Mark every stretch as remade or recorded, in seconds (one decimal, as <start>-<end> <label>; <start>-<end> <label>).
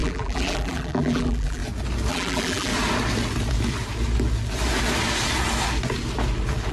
0.0-1.6 remade; 1.6-2.1 recorded; 2.1-2.7 remade; 2.7-6.7 recorded